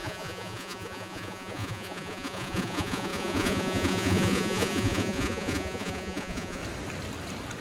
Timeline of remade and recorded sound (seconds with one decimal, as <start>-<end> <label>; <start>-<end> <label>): 0.0-6.6 remade; 6.6-7.6 recorded